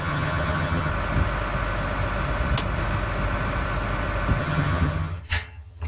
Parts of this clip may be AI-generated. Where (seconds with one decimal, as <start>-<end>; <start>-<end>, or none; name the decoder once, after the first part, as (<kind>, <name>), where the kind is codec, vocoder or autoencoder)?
0.0-0.9 (vocoder, HiFi-GAN); 4.4-5.9